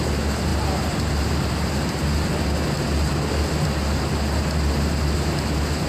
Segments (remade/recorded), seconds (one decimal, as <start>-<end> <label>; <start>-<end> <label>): 0.0-5.9 recorded